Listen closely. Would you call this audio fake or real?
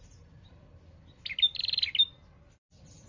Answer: real